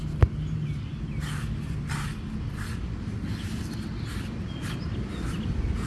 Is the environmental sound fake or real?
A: real